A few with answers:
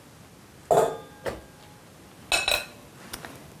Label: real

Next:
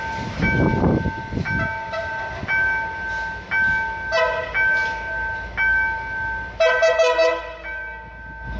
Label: real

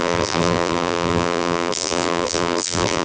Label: fake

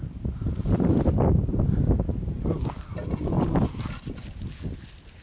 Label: real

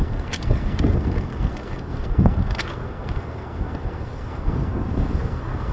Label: fake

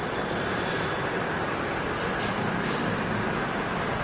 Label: fake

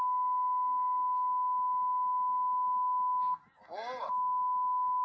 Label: real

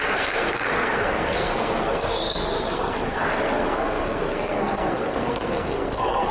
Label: fake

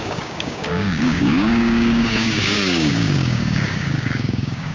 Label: fake